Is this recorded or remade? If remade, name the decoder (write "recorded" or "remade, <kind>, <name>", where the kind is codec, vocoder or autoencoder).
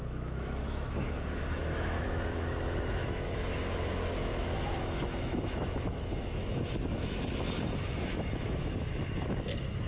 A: remade, autoencoder, DAC-VAE